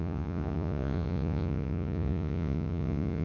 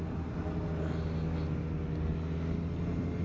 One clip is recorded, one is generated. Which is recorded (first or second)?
second